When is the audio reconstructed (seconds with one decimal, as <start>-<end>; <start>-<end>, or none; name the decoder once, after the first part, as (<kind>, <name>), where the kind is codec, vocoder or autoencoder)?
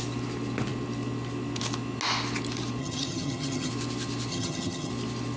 2.8-3.7 (vocoder, HiFi-GAN); 4.3-4.9